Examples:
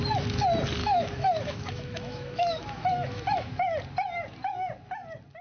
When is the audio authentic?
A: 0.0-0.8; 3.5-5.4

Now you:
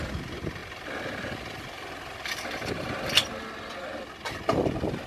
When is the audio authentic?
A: 0.0-5.1

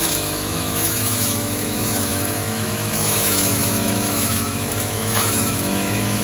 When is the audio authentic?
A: none

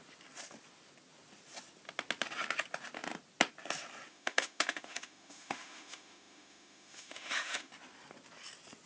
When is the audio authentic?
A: 0.0-4.1; 7.7-8.9